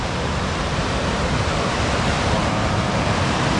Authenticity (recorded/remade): remade